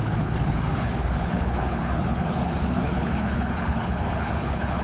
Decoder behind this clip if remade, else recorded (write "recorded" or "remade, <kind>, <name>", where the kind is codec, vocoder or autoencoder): remade, codec, HILCodec